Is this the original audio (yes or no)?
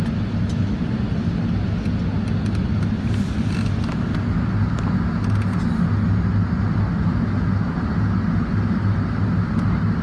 yes